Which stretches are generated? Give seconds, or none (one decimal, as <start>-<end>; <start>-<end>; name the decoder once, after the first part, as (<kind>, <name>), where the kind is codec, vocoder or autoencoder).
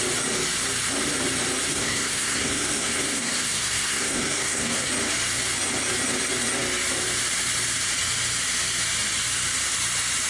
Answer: 1.7-4.9 (codec, SNAC)